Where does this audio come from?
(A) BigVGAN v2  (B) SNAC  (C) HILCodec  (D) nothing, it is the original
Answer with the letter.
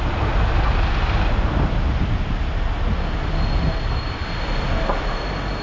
D